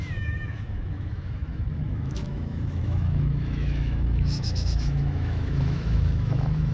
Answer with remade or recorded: remade